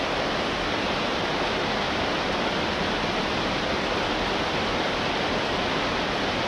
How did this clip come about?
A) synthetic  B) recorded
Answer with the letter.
B